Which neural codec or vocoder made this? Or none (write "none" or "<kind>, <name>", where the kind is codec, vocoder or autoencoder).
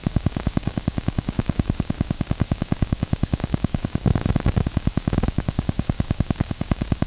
codec, DAC